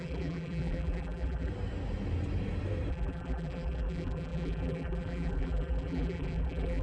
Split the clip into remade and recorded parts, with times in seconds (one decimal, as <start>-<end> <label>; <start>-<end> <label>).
0.0-1.5 remade; 1.5-2.9 recorded; 2.9-6.8 remade